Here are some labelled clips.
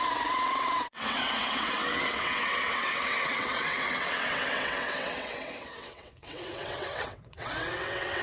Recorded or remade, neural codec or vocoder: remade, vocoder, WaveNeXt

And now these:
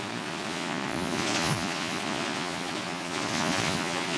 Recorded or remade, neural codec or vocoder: remade, vocoder, Vocos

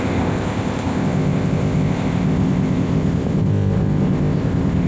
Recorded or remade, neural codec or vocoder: remade, codec, ZipCodec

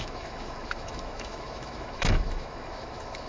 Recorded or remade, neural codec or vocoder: remade, autoencoder, DAC-VAE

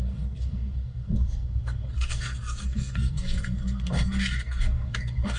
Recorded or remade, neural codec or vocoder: remade, codec, SNAC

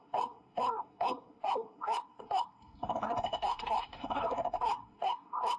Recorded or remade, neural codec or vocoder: remade, codec, SNAC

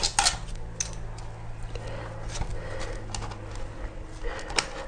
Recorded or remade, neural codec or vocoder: recorded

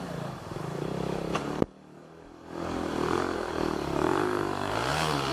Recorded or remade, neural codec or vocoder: remade, codec, DAC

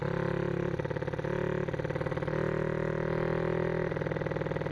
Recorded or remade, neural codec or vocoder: recorded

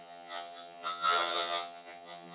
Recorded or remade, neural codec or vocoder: remade, vocoder, HiFi-GAN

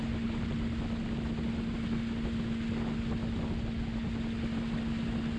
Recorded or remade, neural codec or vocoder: recorded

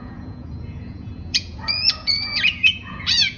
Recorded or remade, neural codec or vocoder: remade, vocoder, Vocos